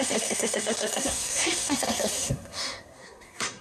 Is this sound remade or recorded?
remade